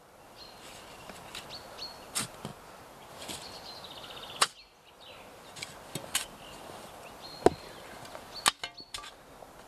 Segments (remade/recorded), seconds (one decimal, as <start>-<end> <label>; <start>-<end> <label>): 0.0-9.7 recorded